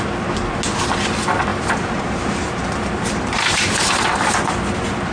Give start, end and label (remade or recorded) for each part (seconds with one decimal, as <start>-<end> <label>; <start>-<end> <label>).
0.0-1.5 recorded; 1.5-4.1 remade; 4.1-5.1 recorded